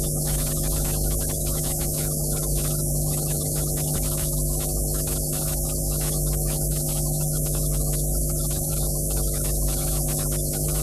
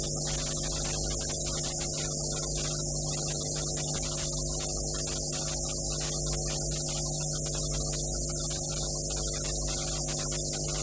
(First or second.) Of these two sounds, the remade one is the first